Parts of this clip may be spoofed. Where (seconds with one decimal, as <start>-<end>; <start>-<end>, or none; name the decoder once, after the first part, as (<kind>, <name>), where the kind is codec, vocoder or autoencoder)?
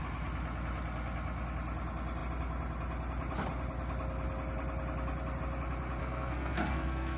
6.0-7.2 (codec, SNAC)